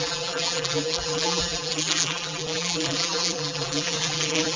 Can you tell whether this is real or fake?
fake